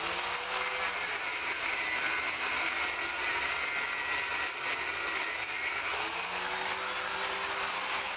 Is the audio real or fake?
real